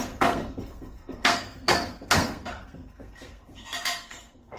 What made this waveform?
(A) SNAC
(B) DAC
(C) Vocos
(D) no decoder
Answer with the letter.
A